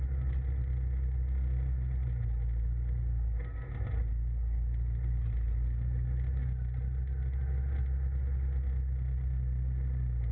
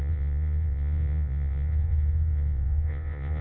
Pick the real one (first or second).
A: first